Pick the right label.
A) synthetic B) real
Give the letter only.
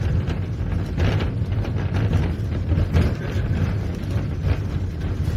B